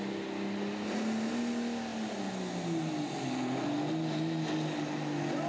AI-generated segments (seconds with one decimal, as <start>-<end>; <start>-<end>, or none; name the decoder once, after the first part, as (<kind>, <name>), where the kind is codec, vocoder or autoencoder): none